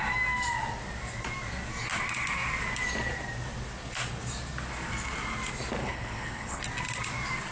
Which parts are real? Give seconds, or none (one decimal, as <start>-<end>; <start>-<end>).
0.0-5.8; 6.6-7.5